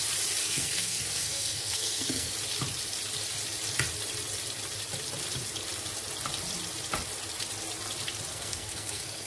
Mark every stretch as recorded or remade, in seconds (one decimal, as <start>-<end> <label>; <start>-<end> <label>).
0.0-0.4 recorded; 0.4-2.3 remade; 2.3-8.3 recorded; 8.3-9.3 remade